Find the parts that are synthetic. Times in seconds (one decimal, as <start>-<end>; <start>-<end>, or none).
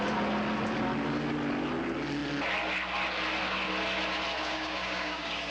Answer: 4.4-5.5